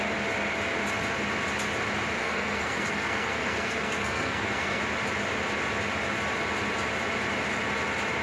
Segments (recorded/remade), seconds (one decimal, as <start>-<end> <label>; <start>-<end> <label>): 0.0-2.2 recorded; 2.2-4.8 remade; 4.8-8.2 recorded